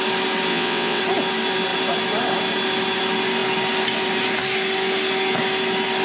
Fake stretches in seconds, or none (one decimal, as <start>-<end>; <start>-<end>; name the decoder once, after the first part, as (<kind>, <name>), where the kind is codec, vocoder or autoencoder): 0.5-1.0 (vocoder, WaveNeXt)